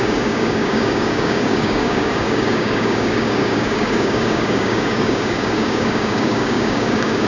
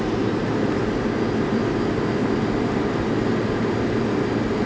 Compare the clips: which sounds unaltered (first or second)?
second